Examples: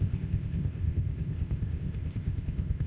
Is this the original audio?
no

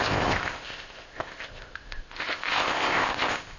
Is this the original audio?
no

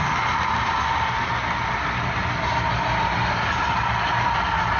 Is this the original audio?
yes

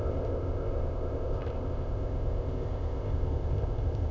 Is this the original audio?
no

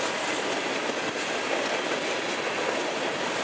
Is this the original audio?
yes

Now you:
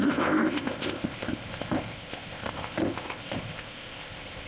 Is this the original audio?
no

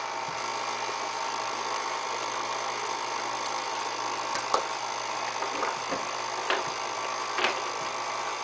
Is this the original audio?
yes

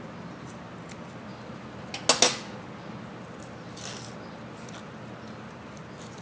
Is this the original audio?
yes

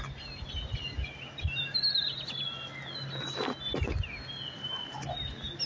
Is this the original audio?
yes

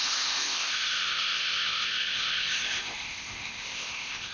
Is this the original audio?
no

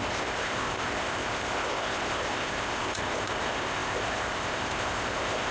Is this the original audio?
no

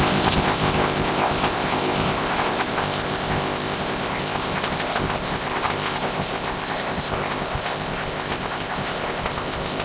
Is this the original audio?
no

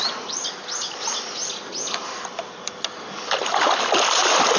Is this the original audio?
yes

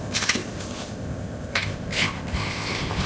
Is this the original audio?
no